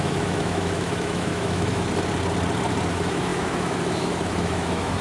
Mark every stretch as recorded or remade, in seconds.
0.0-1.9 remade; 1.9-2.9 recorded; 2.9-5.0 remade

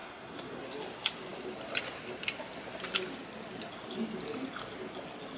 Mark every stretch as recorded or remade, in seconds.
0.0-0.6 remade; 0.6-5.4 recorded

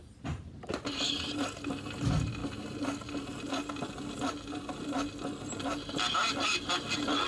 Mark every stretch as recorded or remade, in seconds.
0.0-7.3 recorded

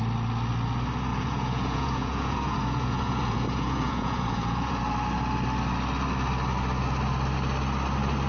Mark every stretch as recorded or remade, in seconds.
0.0-1.1 recorded; 1.1-4.8 remade; 4.8-8.3 recorded

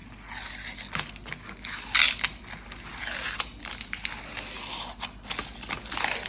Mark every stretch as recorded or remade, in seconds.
0.0-6.3 recorded